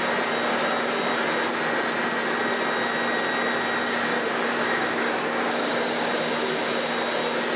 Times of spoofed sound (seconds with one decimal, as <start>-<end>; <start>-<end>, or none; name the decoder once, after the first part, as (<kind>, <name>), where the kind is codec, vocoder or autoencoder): 3.8-6.2 (codec, DAC)